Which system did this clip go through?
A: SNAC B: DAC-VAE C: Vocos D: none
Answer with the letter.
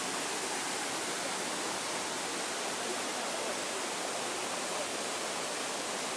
D